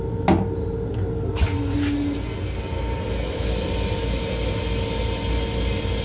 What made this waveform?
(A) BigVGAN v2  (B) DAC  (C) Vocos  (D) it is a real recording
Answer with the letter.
D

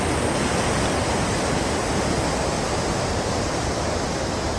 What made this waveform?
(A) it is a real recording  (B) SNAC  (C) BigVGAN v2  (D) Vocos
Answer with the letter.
A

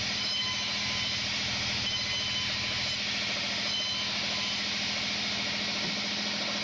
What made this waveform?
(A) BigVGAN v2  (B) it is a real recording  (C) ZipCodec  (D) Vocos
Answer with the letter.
B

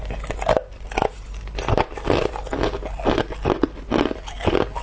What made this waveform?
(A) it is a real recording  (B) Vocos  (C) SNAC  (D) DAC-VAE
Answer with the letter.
A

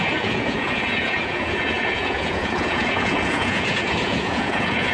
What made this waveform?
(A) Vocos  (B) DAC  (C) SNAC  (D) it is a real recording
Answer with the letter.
A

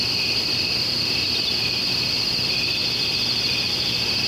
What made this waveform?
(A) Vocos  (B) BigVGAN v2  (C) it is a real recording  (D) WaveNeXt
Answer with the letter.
C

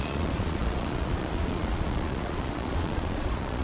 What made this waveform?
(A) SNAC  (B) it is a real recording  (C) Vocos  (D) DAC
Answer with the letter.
C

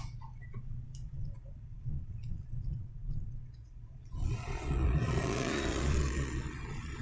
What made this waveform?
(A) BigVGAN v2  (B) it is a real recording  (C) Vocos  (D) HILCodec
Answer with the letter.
C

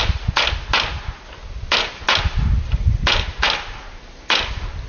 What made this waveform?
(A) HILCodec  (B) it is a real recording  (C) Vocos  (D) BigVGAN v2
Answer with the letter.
B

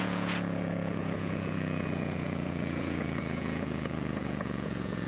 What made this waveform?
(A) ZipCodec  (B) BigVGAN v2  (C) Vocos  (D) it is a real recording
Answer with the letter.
C